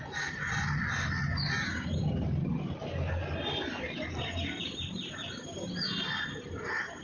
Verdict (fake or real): real